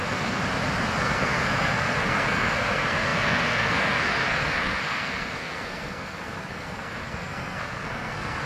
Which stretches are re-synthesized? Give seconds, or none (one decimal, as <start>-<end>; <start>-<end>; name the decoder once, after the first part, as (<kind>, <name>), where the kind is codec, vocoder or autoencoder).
0.0-0.4 (codec, SNAC); 1.0-8.5